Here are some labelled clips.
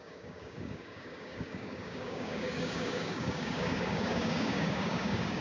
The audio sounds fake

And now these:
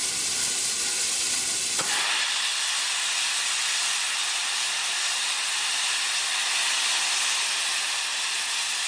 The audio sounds real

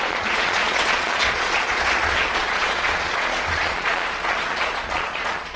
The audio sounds fake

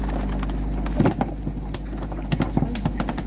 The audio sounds real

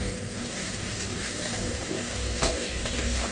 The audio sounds fake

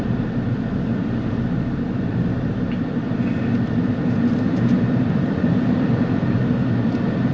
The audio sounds fake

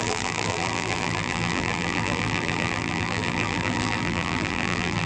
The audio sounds fake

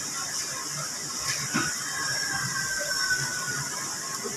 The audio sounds real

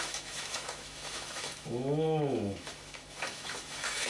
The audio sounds fake